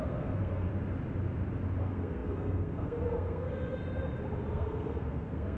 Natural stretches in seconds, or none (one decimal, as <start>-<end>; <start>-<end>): 0.7-1.8; 3.8-4.5